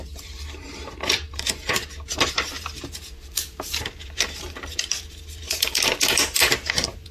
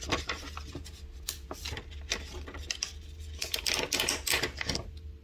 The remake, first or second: first